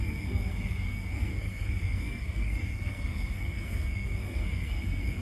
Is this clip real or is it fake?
fake